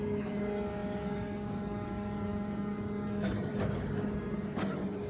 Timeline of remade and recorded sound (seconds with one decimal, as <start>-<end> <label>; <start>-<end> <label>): 0.0-5.1 remade